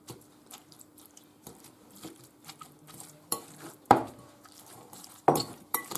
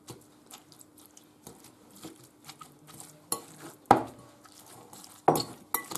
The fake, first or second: first